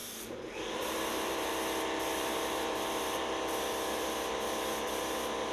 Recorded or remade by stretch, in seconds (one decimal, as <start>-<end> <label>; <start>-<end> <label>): 0.0-1.5 remade; 1.5-2.1 recorded; 2.1-3.2 remade; 3.2-5.5 recorded